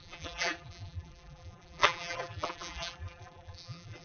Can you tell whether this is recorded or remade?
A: remade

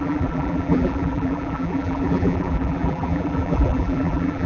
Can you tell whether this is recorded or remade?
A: remade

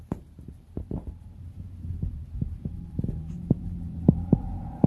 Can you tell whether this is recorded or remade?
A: remade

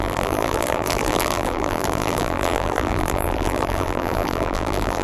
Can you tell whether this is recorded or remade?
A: remade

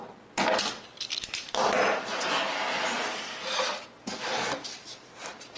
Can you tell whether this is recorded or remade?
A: remade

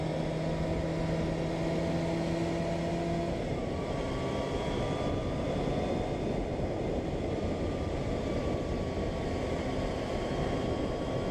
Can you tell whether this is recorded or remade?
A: recorded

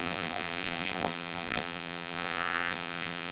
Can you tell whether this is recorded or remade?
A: remade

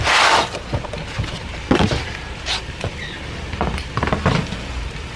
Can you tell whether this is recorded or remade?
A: remade